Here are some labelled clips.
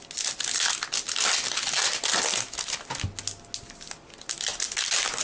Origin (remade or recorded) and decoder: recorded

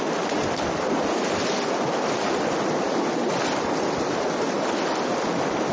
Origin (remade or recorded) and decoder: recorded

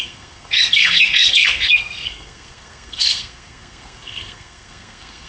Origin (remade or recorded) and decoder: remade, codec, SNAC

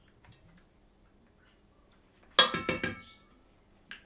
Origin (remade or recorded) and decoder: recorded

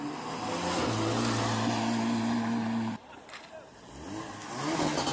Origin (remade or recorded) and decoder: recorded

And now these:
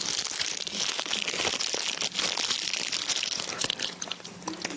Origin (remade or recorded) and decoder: recorded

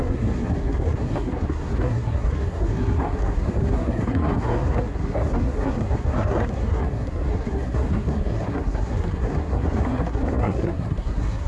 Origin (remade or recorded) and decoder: remade, codec, SNAC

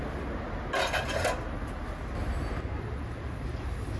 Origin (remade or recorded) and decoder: recorded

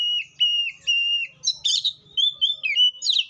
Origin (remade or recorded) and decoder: recorded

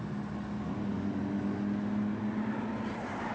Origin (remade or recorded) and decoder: recorded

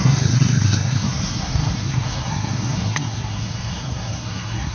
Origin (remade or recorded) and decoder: remade, codec, SNAC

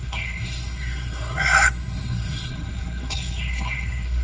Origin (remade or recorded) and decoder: remade, codec, SNAC